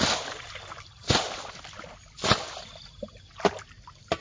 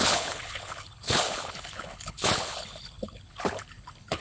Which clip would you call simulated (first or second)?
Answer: second